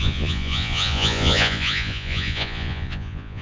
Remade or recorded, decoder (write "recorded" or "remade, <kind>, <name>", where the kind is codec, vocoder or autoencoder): remade, vocoder, Vocos